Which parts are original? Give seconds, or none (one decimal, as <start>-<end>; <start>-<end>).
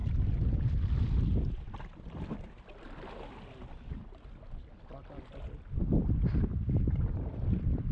0.0-7.9